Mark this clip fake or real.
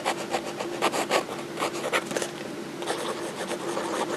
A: real